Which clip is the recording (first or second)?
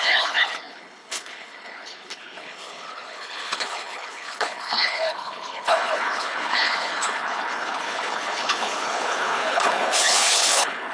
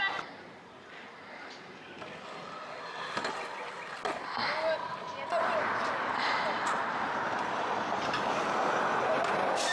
second